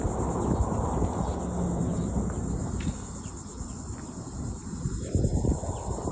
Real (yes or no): yes